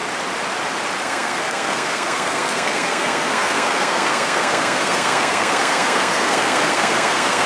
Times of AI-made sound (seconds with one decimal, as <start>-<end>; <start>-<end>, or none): 1.0-7.5